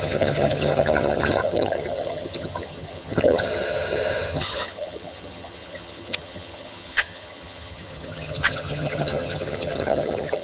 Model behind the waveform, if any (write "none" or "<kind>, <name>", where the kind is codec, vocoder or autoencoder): vocoder, HiFi-GAN